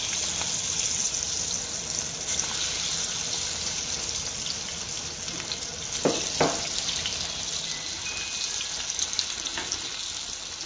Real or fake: real